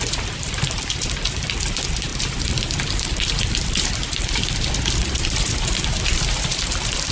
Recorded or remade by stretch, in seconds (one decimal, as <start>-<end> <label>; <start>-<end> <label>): 0.0-7.1 recorded